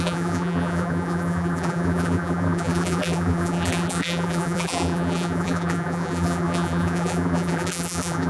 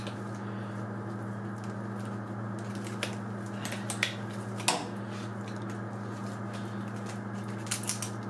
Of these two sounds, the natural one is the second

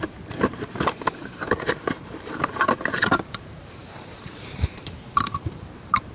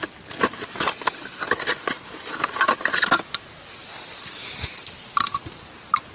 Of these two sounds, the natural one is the second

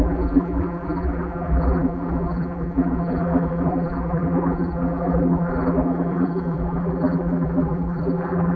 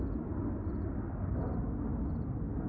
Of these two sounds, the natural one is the second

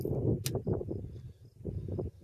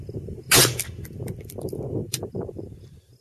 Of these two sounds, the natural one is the first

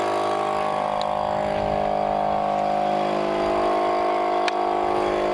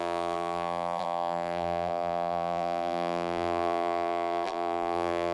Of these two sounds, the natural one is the first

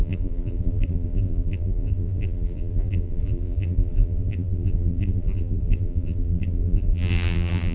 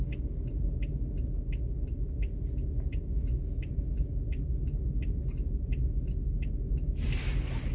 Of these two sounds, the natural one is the second